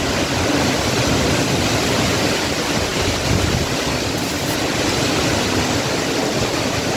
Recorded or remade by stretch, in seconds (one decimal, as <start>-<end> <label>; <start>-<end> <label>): 0.0-7.0 recorded